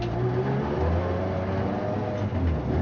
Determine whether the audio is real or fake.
real